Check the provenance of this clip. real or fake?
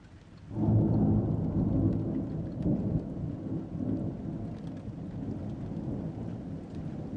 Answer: real